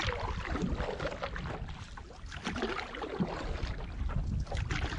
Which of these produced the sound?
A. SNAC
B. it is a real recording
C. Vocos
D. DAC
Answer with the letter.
B